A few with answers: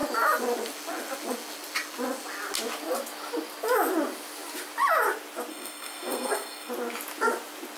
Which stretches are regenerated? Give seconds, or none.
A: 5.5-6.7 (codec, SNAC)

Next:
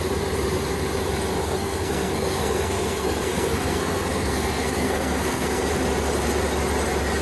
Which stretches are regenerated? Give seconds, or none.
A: 1.4-5.7 (codec, SNAC)